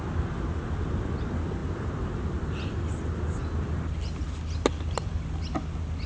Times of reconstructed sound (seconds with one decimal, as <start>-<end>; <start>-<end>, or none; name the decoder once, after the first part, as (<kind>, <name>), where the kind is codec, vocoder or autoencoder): none